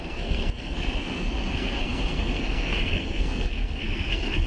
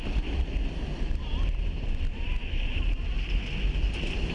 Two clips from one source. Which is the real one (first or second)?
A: second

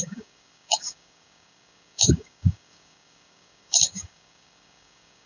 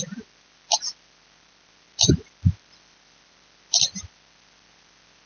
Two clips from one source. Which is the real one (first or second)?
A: second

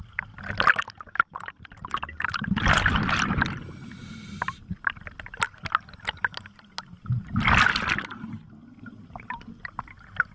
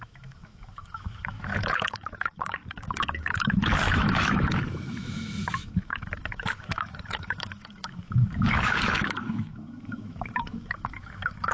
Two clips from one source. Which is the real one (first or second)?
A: first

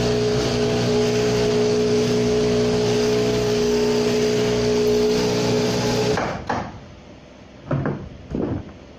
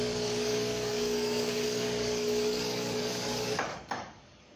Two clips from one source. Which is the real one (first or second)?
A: first